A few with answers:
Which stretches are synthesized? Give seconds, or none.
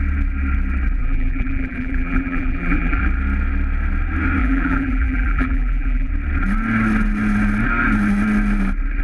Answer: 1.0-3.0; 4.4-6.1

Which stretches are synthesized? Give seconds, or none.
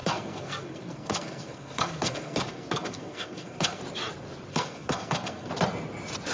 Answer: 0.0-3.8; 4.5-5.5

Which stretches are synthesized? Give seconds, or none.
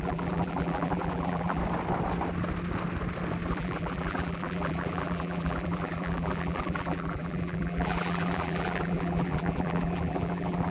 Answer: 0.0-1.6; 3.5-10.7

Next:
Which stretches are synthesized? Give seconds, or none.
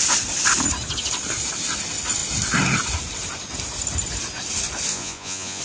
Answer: 4.9-5.6